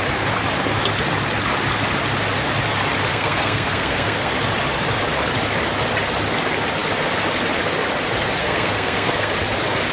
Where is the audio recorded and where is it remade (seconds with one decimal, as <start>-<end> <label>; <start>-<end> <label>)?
0.0-3.1 recorded; 3.1-4.3 remade; 4.3-8.4 recorded; 8.4-9.3 remade; 9.3-9.9 recorded